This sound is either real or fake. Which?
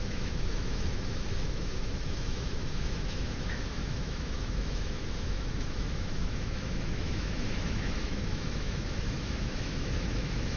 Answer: fake